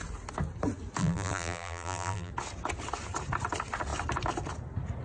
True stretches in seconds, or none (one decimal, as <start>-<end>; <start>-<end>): 0.0-1.0; 2.3-5.0